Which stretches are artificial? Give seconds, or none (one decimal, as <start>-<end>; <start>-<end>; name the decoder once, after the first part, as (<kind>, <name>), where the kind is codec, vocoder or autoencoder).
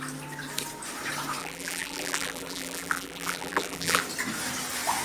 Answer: 1.4-4.0 (vocoder, BigVGAN v2)